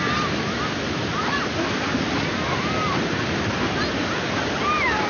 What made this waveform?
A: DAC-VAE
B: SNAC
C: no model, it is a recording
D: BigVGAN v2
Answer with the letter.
C